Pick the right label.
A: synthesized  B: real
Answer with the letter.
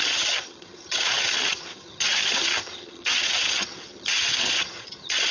A